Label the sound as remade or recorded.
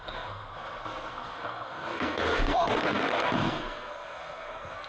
remade